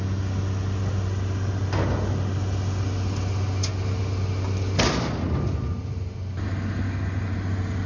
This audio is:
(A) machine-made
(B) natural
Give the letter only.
B